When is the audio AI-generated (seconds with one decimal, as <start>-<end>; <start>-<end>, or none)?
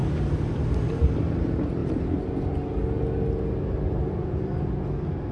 0.0-1.2; 1.8-2.3